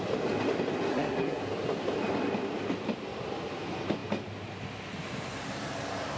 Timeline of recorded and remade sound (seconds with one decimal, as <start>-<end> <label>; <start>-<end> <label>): 0.0-0.9 recorded; 0.9-1.4 remade; 1.4-6.2 recorded